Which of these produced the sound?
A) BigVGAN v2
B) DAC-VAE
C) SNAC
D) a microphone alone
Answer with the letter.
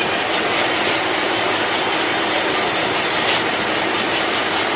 A